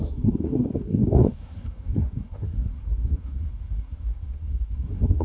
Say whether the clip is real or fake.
fake